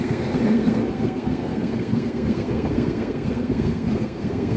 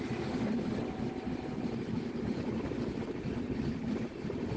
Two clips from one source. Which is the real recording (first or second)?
second